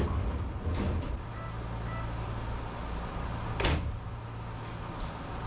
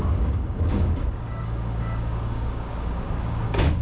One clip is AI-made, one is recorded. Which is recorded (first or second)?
first